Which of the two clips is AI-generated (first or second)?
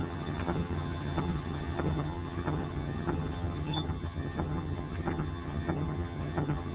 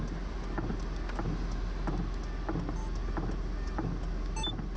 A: first